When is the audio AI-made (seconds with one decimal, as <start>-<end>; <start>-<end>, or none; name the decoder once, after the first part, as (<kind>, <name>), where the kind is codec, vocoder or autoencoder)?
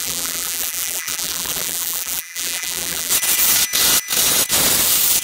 0.0-3.1 (vocoder, BigVGAN v2)